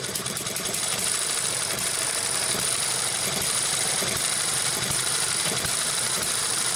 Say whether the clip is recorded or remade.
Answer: remade